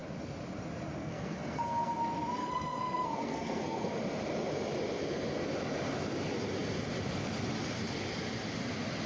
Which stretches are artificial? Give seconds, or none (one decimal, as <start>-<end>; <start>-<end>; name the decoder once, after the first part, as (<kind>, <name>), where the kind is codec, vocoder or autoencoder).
1.0-2.0 (codec, SNAC); 2.4-3.9

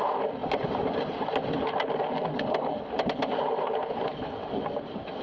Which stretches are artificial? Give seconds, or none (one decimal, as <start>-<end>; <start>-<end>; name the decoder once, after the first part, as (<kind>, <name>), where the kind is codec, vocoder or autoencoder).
none

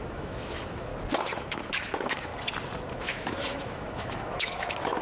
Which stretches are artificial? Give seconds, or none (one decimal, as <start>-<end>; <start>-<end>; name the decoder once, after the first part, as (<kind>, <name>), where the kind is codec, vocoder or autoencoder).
0.0-0.9 (autoencoder, DAC-VAE); 1.4-2.3; 2.9-5.0

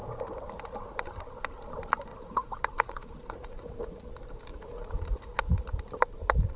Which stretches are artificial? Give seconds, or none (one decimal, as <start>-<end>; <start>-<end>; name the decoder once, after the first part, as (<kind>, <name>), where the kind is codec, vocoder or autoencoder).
2.1-4.1 (vocoder, Vocos); 4.5-5.7

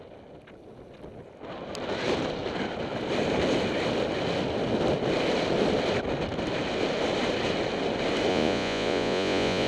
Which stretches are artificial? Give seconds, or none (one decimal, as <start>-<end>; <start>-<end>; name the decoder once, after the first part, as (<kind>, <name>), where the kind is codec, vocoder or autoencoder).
8.3-9.7 (vocoder, Vocos)

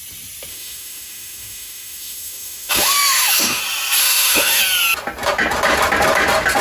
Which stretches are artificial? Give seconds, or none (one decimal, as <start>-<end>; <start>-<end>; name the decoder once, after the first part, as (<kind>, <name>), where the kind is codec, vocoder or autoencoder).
0.5-3.6 (autoencoder, DAC-VAE); 4.0-4.6